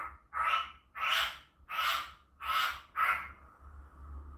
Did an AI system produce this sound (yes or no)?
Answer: no